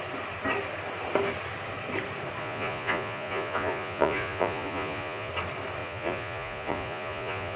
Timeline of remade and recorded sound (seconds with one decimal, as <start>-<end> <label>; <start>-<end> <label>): 0.0-2.4 recorded; 2.4-5.3 remade; 5.3-5.8 recorded; 5.8-7.6 remade